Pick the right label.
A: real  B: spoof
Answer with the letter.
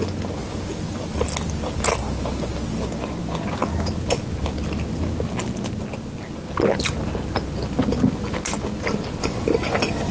A